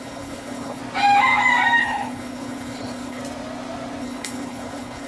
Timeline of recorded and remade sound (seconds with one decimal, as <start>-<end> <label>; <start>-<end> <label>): 0.0-0.8 remade; 0.8-1.8 recorded; 1.8-3.2 remade; 3.2-4.0 recorded; 4.0-5.1 remade